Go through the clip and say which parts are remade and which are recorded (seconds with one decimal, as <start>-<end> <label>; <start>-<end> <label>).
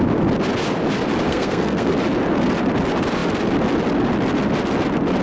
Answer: 0.0-1.3 recorded; 1.3-1.9 remade; 1.9-5.2 recorded